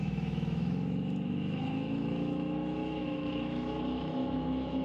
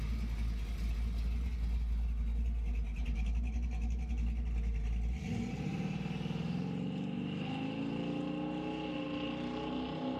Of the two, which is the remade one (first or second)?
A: first